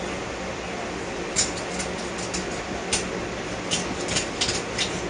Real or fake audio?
real